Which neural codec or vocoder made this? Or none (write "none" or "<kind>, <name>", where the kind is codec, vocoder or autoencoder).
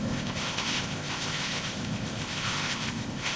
codec, ZipCodec